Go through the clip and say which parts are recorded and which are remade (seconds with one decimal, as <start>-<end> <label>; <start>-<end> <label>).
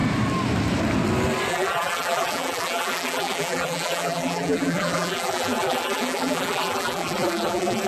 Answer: 0.0-1.5 recorded; 1.5-7.9 remade